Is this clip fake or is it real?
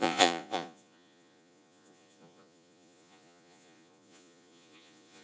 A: fake